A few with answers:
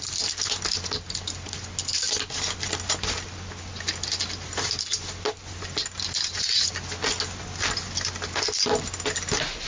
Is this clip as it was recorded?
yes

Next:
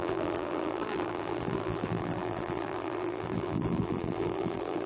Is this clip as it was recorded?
no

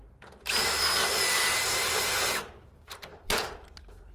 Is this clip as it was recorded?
no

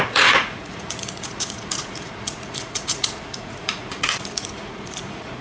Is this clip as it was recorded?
no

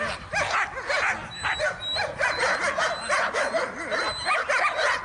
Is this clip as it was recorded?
yes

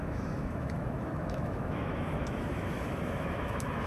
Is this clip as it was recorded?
no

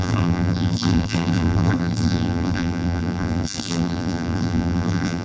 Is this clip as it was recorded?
no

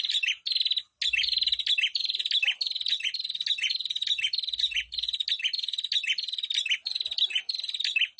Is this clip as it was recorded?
yes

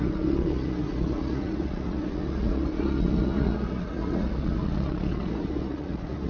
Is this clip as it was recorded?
no